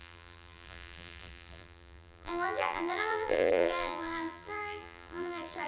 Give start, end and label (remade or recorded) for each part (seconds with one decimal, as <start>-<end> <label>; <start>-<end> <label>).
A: 0.0-5.7 remade